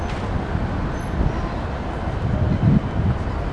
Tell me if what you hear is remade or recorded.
recorded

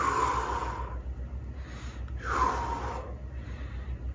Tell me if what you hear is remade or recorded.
recorded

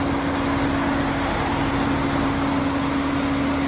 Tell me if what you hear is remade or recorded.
recorded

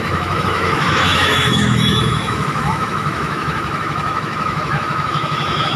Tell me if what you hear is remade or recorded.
remade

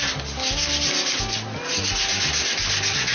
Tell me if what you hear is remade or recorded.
recorded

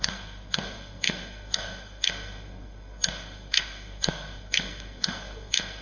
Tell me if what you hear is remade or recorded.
remade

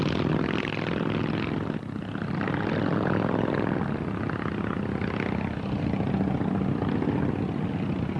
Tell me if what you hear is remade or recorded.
recorded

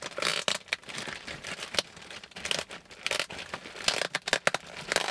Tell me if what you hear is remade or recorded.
recorded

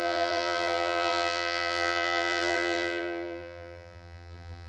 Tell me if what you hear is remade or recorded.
remade